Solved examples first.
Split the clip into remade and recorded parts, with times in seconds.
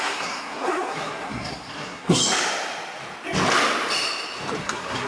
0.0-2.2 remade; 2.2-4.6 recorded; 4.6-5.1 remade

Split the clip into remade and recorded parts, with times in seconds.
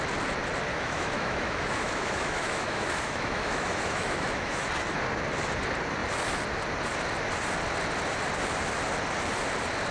0.0-0.7 recorded; 0.7-4.7 remade; 4.7-9.9 recorded